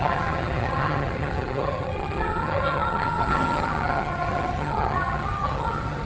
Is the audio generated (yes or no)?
yes